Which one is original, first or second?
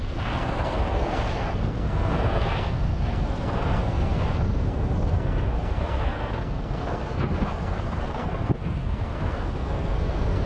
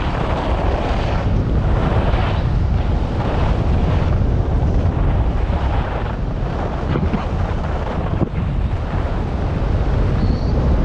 second